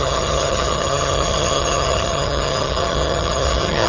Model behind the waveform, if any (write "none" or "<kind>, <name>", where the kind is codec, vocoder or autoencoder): vocoder, HiFi-GAN